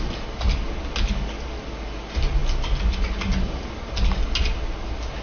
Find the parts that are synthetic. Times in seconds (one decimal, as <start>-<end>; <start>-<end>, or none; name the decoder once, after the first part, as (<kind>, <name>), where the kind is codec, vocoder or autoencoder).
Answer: none